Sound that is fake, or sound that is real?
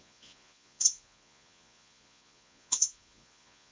fake